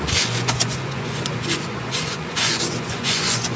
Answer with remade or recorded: remade